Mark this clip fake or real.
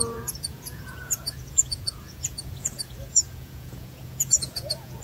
fake